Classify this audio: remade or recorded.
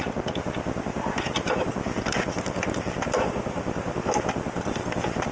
recorded